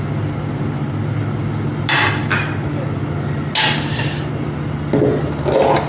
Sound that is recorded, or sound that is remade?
recorded